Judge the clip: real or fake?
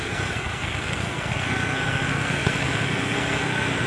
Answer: fake